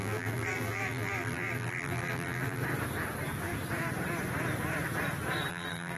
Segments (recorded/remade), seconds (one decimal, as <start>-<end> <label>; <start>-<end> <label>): 0.0-2.6 remade; 2.6-5.5 recorded; 5.5-6.0 remade